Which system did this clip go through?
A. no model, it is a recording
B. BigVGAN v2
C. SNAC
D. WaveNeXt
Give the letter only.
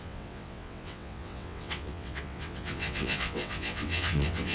D